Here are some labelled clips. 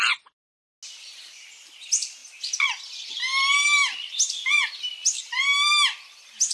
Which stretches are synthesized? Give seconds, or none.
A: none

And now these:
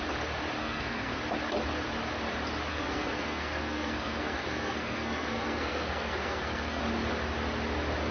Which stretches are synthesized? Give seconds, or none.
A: 0.6-1.2; 2.7-6.8

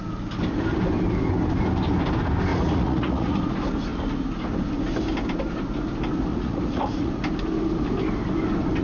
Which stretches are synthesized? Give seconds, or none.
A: 2.5-3.4; 6.3-7.1

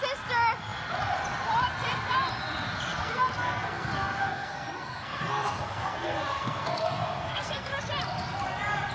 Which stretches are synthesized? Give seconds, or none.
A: 2.9-7.7

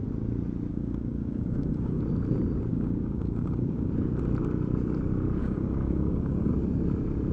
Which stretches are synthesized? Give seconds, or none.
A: 0.7-2.0; 2.7-3.9; 5.4-6.5

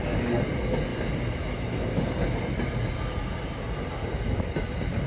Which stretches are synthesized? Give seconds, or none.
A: none

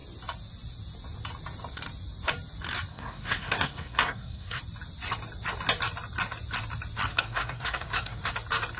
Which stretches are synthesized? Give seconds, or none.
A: 2.9-4.6; 7.1-8.3

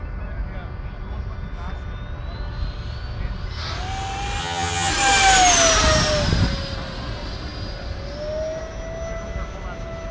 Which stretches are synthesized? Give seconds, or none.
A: 4.4-4.9